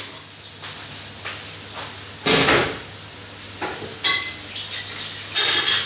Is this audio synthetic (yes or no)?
no